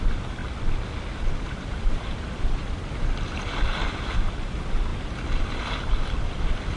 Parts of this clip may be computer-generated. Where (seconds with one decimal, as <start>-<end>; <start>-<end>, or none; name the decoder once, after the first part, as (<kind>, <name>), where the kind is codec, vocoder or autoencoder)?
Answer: 0.0-0.4 (vocoder, BigVGAN v2); 1.7-4.9; 6.2-6.8

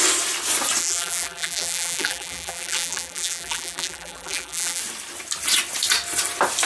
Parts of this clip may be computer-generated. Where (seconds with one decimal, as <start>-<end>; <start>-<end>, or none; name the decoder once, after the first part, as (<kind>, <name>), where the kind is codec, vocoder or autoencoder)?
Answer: 0.8-4.8 (vocoder, BigVGAN v2)

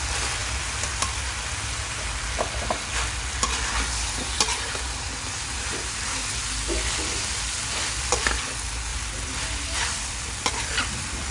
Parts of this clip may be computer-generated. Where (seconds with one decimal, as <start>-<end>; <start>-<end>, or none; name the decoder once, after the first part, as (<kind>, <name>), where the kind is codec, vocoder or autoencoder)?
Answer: 8.9-11.3 (vocoder, BigVGAN v2)

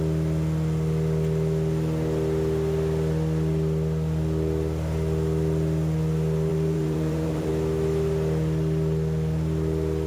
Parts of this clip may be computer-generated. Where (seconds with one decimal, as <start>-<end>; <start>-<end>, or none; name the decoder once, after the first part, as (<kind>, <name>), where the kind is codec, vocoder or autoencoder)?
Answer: 6.5-7.5 (vocoder, BigVGAN v2)

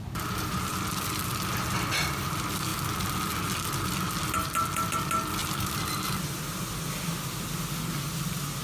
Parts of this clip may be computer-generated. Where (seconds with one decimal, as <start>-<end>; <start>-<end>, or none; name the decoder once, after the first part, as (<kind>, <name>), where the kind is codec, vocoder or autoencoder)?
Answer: 0.7-1.2 (vocoder, BigVGAN v2); 5.4-7.5

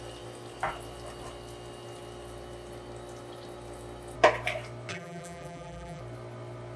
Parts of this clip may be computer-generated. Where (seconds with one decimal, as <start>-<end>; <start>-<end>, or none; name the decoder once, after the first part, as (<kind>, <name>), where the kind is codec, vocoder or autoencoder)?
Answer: 4.9-6.0 (vocoder, BigVGAN v2)

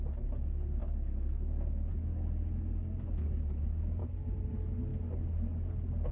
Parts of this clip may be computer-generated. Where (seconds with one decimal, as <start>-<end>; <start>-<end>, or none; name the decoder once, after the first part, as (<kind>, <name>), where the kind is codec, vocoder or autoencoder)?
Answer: 4.0-4.5 (vocoder, BigVGAN v2)

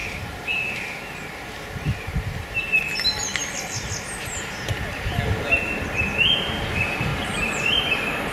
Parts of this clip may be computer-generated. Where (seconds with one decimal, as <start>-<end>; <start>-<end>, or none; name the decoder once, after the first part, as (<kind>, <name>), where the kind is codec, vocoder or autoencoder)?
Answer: 0.0-2.6 (vocoder, BigVGAN v2); 7.1-7.8